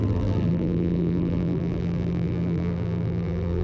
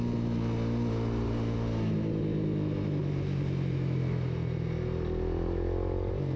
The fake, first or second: first